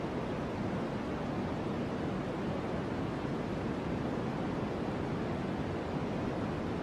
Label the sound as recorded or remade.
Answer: recorded